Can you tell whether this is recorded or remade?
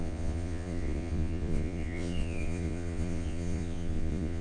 remade